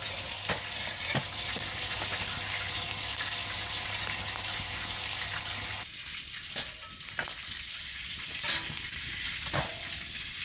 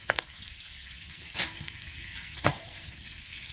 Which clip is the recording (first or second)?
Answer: first